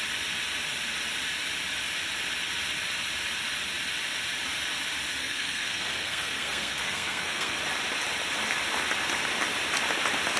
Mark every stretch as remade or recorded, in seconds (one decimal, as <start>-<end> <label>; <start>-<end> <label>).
0.0-5.2 recorded; 5.2-7.6 remade; 7.6-10.4 recorded